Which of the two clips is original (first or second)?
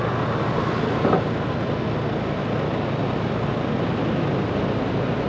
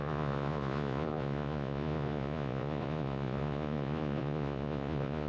first